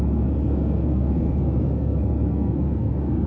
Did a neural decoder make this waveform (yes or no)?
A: yes